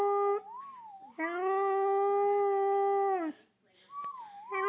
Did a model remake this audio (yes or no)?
no